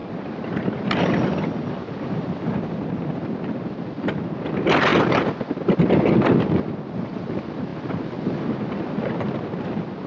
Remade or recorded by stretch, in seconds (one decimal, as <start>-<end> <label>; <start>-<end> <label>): 0.0-4.4 remade; 4.4-10.1 recorded